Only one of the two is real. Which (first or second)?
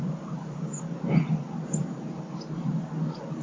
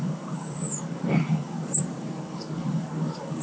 first